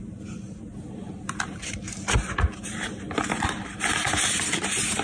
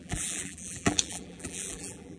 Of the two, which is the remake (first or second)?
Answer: second